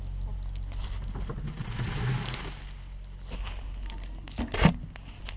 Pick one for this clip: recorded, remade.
recorded